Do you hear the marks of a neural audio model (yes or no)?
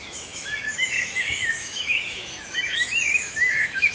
yes